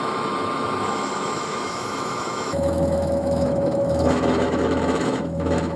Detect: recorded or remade remade